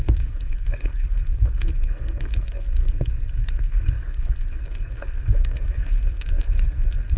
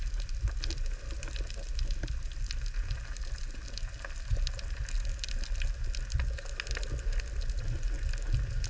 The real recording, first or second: second